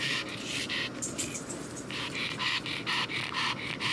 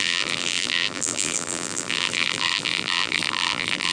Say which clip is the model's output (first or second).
second